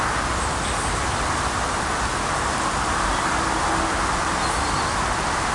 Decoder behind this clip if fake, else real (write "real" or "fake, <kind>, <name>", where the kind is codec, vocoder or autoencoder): real